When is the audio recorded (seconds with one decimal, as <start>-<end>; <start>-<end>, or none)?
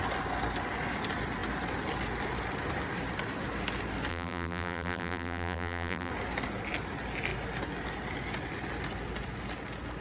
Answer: 0.0-4.1; 6.1-10.0